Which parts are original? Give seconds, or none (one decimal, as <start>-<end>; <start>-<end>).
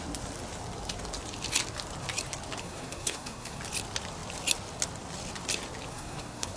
0.0-2.6; 3.6-5.9